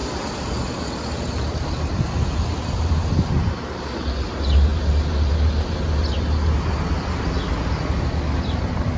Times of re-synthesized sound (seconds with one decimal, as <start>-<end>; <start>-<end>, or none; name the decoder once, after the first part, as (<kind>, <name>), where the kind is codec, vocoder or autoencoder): none